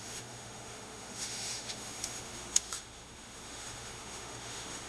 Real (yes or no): no